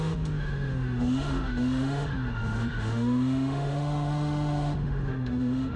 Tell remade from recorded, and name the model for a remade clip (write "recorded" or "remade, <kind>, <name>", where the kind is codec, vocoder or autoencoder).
remade, autoencoder, DAC-VAE